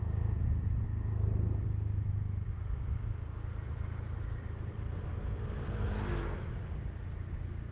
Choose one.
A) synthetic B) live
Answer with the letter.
B